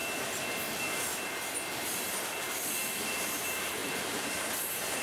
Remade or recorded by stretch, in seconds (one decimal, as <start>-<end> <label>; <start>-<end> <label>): 0.0-3.0 recorded; 3.0-5.0 remade